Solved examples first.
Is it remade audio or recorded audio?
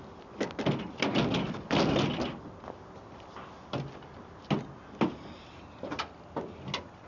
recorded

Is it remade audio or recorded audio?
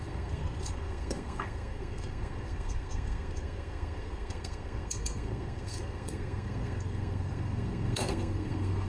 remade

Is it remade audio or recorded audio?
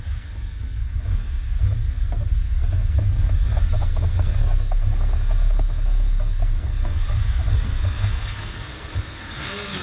remade